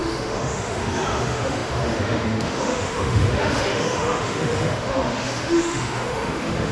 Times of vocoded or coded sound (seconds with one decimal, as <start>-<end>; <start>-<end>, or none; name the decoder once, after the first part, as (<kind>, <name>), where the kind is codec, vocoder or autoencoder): 0.0-6.7 (autoencoder, DAC-VAE)